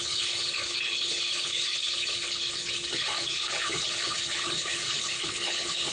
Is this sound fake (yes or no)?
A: yes